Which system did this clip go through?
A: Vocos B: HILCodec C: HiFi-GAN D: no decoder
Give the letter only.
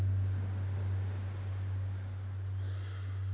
D